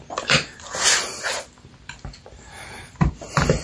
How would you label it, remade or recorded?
remade